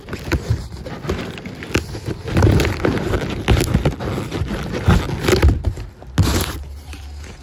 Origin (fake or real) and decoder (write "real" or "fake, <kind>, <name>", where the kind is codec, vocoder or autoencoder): real